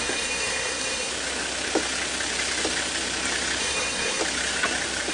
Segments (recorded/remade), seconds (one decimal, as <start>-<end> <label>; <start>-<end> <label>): 0.0-1.1 remade; 1.1-3.6 recorded; 3.6-4.2 remade; 4.2-5.1 recorded